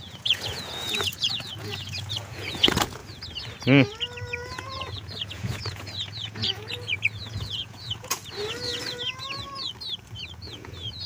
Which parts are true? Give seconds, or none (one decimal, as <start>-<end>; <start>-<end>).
3.0-4.5; 8.2-10.4